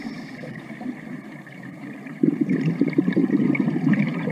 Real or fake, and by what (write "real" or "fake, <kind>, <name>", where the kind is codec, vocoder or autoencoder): fake, vocoder, BigVGAN v2